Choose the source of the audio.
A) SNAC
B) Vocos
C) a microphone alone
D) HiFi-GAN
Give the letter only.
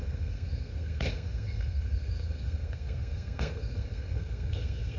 A